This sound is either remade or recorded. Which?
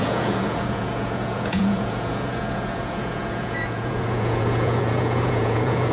remade